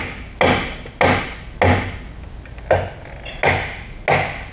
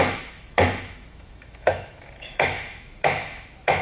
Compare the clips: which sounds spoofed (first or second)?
second